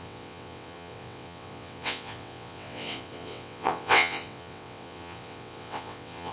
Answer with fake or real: fake